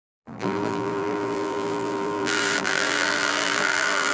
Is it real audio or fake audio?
fake